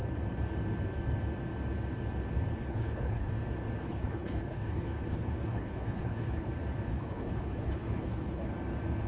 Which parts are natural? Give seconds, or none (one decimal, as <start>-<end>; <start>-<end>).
0.0-2.7; 3.3-3.8; 6.5-6.9; 8.5-9.1